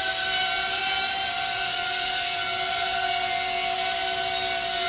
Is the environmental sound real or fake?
real